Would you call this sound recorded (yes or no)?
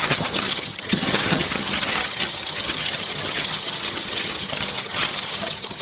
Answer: no